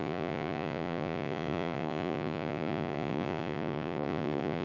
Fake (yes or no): yes